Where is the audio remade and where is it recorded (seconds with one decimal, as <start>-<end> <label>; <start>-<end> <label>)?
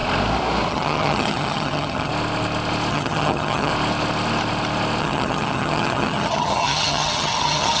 0.0-0.7 recorded; 0.7-2.1 remade; 2.1-2.9 recorded; 2.9-3.7 remade; 3.7-5.0 recorded; 5.0-7.8 remade